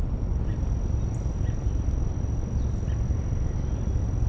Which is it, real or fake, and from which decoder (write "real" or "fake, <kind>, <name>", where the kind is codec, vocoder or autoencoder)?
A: real